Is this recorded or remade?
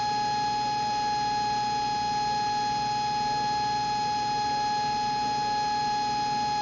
recorded